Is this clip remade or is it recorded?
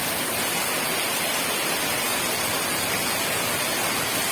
recorded